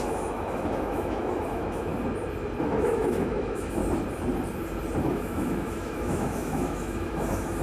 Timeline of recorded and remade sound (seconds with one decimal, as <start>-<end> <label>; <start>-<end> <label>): 0.0-1.9 remade; 1.9-2.6 recorded; 2.6-3.8 remade; 3.8-5.0 recorded; 5.0-7.6 remade